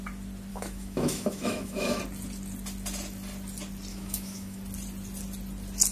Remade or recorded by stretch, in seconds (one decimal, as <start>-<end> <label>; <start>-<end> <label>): 0.0-0.5 recorded; 0.5-2.0 remade; 2.0-3.9 recorded; 3.9-4.6 remade; 4.6-5.9 recorded